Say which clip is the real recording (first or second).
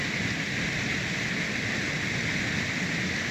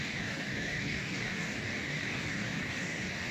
first